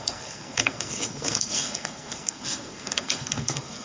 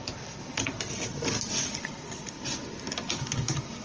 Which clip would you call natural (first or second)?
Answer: second